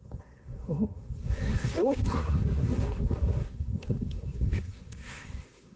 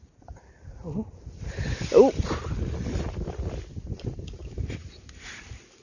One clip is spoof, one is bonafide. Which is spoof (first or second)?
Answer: first